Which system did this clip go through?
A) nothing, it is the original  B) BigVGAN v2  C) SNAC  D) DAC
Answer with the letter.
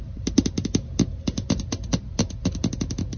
A